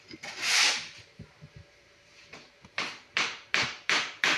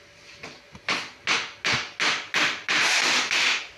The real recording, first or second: second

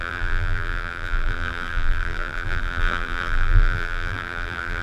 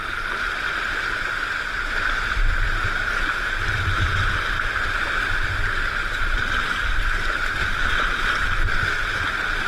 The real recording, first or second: second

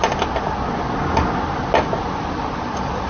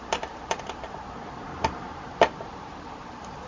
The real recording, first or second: first